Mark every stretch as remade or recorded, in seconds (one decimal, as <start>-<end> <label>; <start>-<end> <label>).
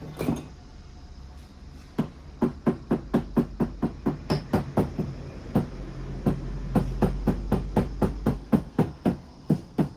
0.0-8.3 recorded; 8.3-10.0 remade